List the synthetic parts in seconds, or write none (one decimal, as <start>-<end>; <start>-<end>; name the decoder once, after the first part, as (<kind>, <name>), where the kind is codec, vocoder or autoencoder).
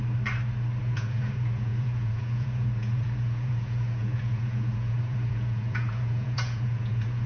0.8-7.3 (vocoder, Vocos)